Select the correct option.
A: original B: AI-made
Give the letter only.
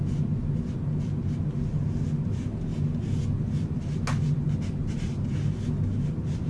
A